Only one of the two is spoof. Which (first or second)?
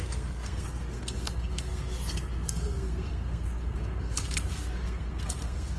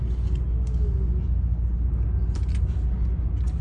first